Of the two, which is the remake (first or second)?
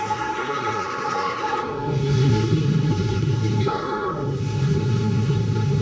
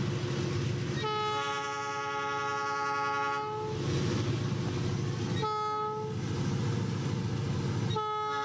first